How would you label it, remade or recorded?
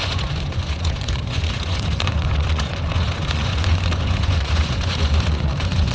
remade